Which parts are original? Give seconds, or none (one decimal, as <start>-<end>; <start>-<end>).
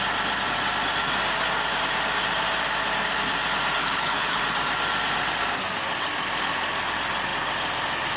0.0-3.8; 4.4-8.2